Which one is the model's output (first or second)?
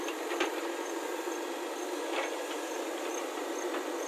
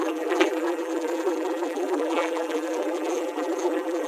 second